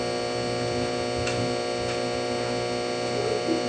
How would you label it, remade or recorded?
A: recorded